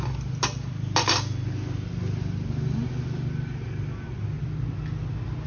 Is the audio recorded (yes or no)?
yes